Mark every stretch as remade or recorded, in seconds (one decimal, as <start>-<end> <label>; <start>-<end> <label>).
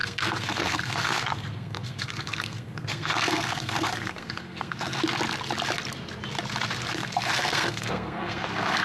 0.0-5.0 remade; 5.0-6.9 recorded; 6.9-8.8 remade